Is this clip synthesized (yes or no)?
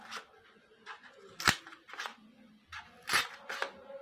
no